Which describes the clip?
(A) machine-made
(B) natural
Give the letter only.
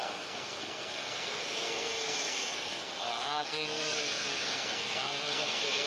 A